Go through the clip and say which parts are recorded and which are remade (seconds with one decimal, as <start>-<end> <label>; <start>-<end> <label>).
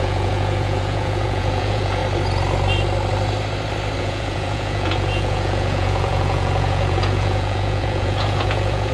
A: 0.0-2.0 remade; 2.0-4.0 recorded; 4.0-8.9 remade